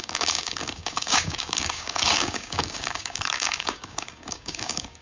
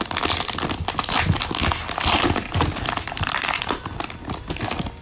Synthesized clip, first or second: first